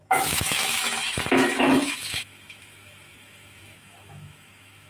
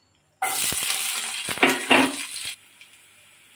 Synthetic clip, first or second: first